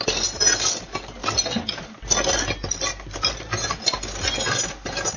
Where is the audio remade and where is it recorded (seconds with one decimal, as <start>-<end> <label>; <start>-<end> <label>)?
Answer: 0.0-5.2 recorded